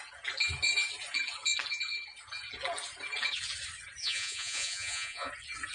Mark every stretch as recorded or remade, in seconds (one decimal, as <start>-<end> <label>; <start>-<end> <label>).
0.0-4.0 recorded; 4.0-5.3 remade; 5.3-5.7 recorded

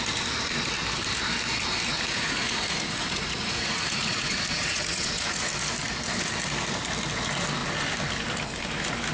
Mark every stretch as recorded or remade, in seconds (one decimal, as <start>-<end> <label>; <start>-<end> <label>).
0.0-1.9 recorded; 1.9-5.5 remade; 5.5-9.1 recorded

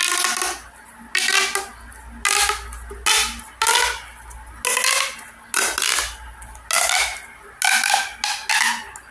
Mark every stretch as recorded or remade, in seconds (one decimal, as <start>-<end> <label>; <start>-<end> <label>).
0.0-9.1 recorded

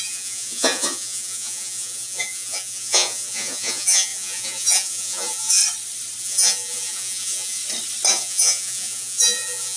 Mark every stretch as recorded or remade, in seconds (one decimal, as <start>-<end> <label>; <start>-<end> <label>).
0.0-5.6 remade; 5.6-6.2 recorded; 6.2-7.6 remade; 7.6-8.1 recorded; 8.1-9.8 remade

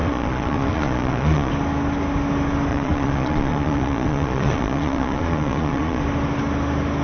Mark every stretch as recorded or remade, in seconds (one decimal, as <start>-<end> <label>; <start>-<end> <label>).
0.0-1.5 remade; 1.5-2.7 recorded; 2.7-6.0 remade; 6.0-7.0 recorded

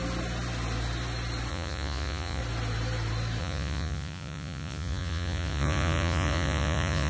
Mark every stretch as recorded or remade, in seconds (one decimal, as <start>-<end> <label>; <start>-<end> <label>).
0.0-1.5 recorded; 1.5-2.4 remade; 2.4-3.4 recorded; 3.4-7.1 remade